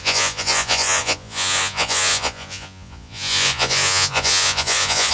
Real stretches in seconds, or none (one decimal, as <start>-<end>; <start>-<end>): none